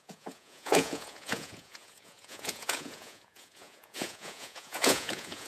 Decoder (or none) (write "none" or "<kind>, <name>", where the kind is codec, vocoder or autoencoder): vocoder, Vocos